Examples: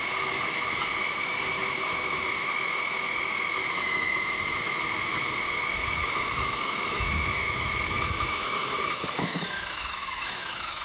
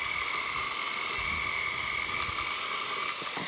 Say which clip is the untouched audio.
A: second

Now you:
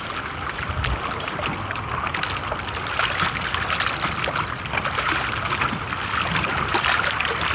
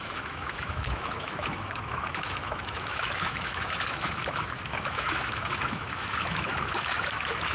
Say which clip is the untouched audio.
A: first